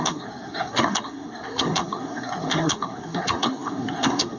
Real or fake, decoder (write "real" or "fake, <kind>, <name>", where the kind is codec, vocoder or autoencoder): fake, codec, SNAC